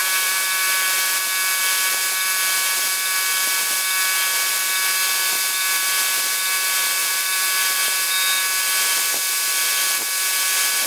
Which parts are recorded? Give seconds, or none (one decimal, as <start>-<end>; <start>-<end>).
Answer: 1.2-7.0; 7.8-10.9